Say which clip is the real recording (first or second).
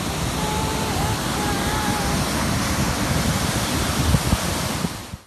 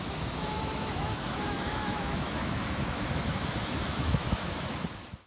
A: first